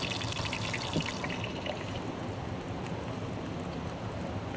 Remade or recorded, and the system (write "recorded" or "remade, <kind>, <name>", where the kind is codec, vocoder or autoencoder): recorded